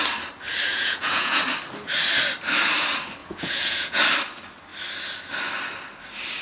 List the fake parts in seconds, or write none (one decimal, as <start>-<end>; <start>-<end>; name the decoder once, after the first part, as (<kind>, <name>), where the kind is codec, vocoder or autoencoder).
0.7-1.4 (vocoder, Vocos); 3.2-4.0